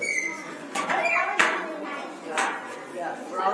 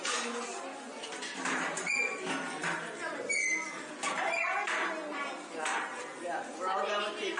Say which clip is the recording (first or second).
second